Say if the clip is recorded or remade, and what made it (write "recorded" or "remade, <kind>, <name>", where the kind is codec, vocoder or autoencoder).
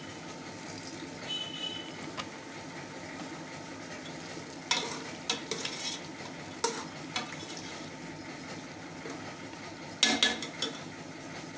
recorded